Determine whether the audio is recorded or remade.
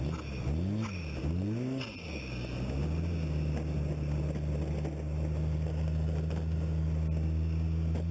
recorded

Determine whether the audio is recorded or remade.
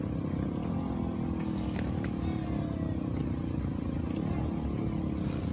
recorded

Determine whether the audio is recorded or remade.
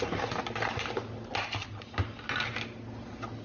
recorded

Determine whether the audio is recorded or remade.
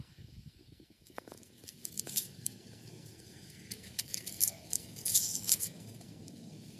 remade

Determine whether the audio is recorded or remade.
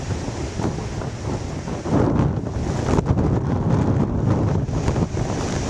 recorded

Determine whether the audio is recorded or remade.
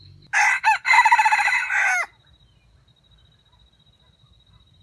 recorded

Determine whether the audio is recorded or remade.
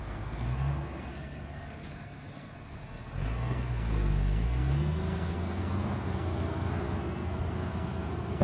remade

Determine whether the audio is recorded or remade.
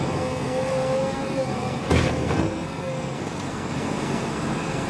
remade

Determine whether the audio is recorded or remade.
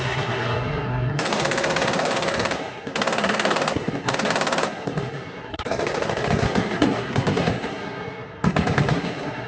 remade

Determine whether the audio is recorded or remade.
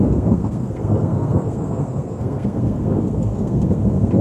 remade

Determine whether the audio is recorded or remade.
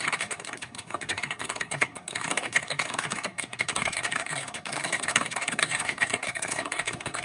remade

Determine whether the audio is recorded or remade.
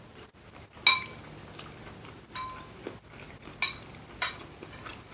recorded